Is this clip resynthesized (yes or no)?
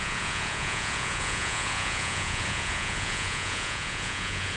yes